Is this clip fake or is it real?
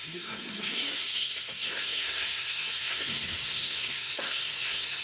fake